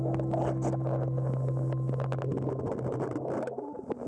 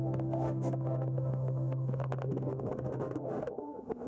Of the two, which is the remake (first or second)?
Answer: second